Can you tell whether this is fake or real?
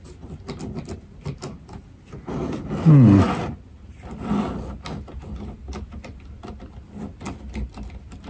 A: real